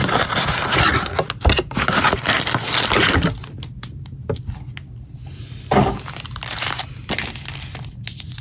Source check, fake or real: real